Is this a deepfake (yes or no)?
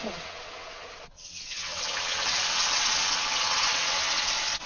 yes